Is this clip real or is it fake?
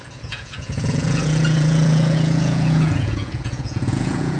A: fake